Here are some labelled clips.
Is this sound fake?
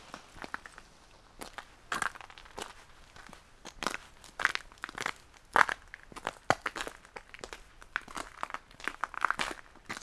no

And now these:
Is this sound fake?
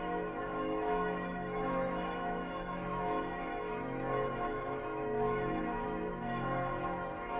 yes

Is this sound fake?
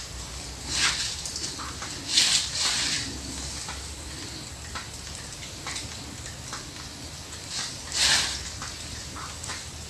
no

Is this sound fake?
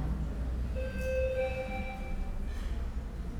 no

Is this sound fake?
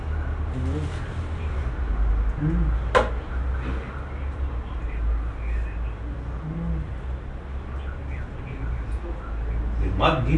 no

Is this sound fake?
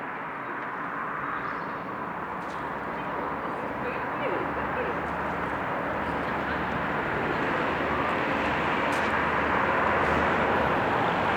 no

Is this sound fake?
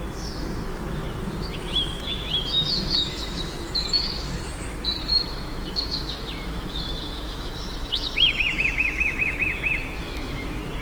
yes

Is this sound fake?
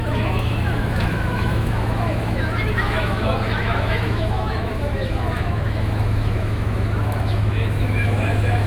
yes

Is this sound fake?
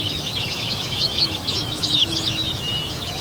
yes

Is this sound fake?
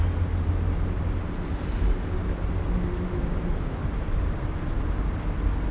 no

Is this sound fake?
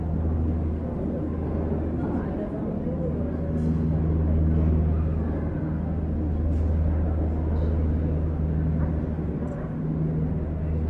no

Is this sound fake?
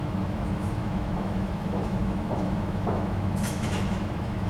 yes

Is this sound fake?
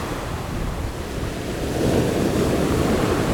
no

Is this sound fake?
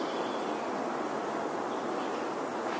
no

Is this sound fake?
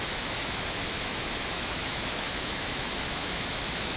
yes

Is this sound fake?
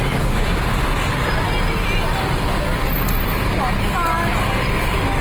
no